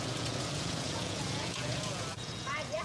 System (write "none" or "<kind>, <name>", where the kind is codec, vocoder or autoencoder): vocoder, Vocos